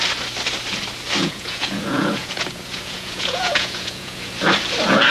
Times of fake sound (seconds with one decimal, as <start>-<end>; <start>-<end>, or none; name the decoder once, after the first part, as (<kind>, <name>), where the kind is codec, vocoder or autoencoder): 1.2-4.3 (vocoder, Vocos)